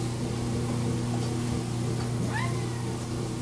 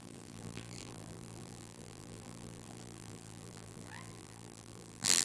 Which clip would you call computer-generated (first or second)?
second